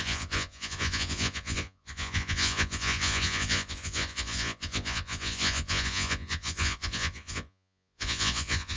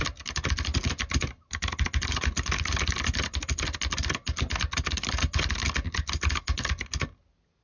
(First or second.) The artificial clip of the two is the first